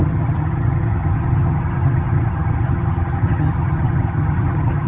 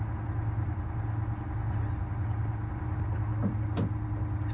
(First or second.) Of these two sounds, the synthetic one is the first